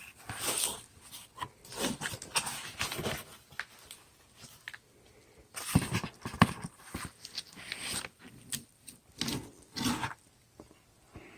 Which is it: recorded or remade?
recorded